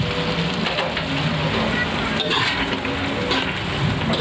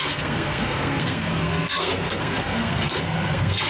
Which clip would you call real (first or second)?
first